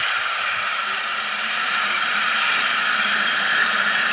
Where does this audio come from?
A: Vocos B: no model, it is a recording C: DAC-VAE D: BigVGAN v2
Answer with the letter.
D